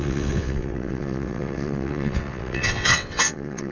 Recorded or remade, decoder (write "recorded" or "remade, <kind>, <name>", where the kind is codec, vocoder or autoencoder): remade, vocoder, WaveNeXt